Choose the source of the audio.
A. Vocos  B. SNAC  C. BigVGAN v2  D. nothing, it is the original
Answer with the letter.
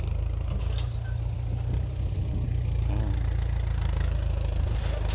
D